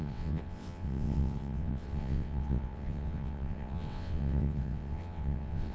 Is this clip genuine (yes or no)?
no